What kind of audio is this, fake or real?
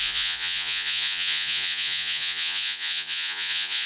fake